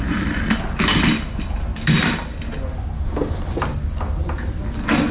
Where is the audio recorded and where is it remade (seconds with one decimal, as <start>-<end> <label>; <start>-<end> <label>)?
0.0-5.1 recorded